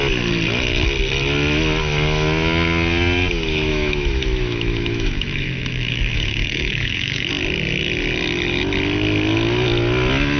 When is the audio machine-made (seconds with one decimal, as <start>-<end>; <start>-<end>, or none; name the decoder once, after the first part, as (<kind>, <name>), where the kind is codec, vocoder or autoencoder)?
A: 3.7-7.3 (autoencoder, DAC-VAE)